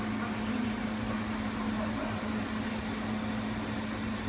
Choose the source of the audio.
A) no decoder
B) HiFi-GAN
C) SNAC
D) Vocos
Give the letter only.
A